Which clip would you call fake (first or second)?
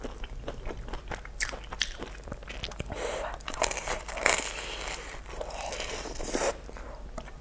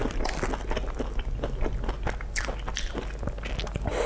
first